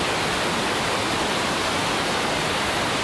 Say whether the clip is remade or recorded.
recorded